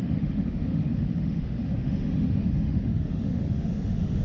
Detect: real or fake fake